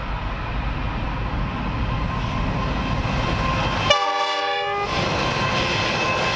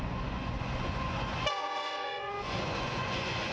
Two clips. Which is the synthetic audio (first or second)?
second